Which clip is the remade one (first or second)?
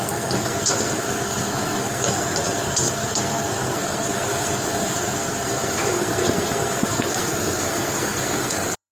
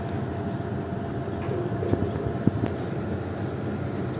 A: first